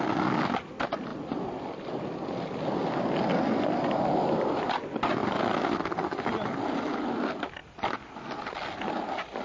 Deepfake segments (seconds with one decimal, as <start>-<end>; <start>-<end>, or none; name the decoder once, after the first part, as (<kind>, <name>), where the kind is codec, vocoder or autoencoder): none